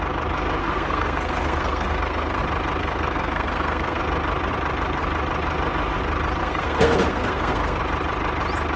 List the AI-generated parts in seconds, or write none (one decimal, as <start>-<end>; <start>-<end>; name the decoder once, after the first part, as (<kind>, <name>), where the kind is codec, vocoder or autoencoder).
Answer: 0.6-2.4 (codec, SNAC); 2.8-4.0; 6.4-7.8